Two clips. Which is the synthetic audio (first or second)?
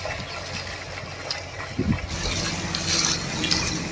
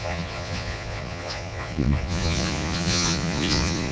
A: second